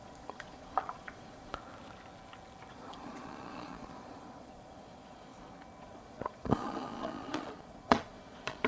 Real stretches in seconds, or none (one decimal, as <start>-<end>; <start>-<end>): 1.5-2.7; 5.3-5.8